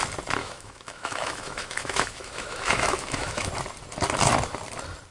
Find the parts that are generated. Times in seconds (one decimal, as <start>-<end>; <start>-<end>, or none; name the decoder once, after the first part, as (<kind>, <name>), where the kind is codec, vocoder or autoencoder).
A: 0.4-3.5 (autoencoder, DAC-VAE)